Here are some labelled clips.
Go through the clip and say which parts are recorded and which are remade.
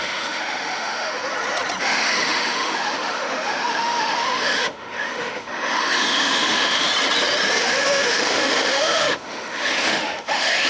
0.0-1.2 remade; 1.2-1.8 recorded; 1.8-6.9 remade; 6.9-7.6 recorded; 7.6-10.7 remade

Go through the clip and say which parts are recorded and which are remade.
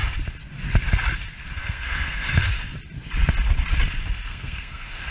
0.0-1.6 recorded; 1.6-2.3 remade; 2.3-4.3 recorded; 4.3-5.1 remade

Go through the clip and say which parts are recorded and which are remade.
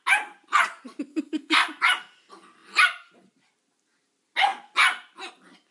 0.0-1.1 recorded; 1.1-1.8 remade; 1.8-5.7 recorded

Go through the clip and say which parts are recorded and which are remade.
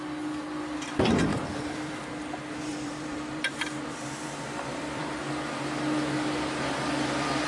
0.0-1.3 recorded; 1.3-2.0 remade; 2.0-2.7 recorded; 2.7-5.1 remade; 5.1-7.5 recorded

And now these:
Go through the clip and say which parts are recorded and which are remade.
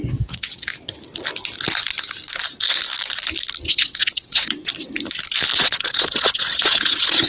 0.0-0.7 remade; 0.7-3.7 recorded; 3.7-4.7 remade; 4.7-5.6 recorded; 5.6-7.3 remade